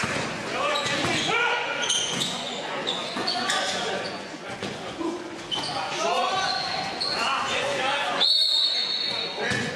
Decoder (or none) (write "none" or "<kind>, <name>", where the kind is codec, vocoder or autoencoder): vocoder, Vocos